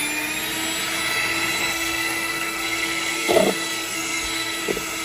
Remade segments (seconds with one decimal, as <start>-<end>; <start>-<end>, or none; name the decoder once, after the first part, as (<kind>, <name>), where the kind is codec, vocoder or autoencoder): 1.6-4.6 (codec, SNAC)